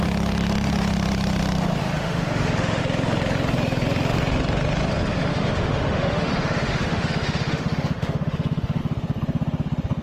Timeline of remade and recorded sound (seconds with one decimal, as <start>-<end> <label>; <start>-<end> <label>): 0.0-1.8 recorded; 1.8-2.8 remade; 2.8-5.3 recorded; 5.3-8.8 remade; 8.8-10.0 recorded